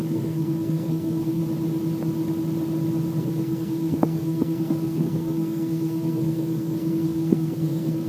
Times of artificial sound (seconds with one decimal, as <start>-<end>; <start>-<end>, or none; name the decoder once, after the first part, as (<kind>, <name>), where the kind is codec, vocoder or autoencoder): 0.0-1.4 (codec, SNAC); 3.2-8.1